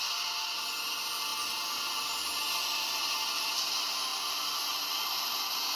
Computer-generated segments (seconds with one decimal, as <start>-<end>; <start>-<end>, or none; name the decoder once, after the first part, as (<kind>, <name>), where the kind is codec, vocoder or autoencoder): none